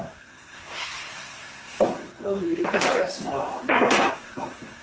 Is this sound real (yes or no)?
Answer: no